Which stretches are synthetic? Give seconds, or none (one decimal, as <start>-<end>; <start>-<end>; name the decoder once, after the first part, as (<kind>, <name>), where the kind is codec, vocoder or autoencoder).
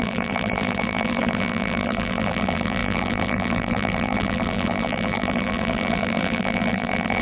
0.0-7.2 (vocoder, BigVGAN v2)